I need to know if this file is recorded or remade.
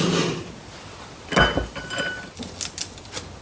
recorded